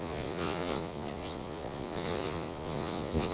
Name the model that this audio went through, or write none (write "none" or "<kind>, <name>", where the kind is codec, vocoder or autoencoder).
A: vocoder, Vocos